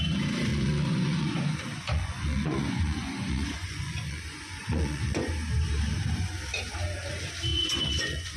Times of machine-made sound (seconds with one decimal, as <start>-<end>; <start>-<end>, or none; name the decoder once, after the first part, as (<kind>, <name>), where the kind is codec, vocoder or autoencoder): 0.5-5.3 (vocoder, Vocos); 7.5-8.4